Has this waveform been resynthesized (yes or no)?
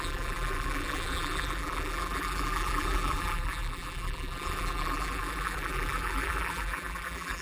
yes